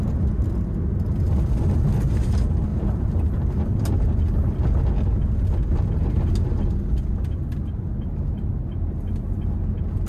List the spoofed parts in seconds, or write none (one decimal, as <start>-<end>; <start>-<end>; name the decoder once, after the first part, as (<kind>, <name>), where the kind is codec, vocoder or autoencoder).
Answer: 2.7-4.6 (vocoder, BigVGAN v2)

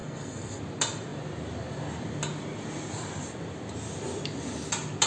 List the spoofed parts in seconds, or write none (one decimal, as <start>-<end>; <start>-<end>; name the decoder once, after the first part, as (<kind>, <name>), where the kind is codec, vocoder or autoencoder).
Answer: 0.0-0.6 (codec, SNAC)

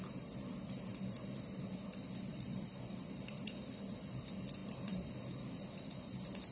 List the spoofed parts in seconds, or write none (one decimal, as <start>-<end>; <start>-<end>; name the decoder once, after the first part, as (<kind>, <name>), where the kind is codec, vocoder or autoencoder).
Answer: 0.9-3.5 (vocoder, BigVGAN v2); 4.6-5.2